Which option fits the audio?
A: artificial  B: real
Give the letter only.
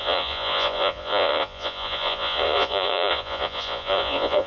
A